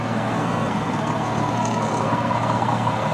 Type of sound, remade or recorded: remade